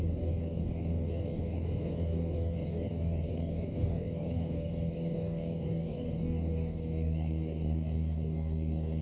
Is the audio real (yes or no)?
no